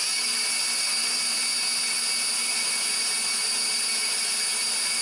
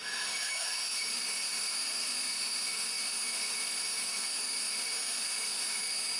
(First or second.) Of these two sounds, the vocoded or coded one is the second